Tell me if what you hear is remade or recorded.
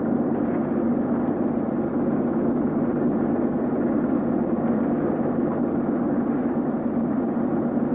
recorded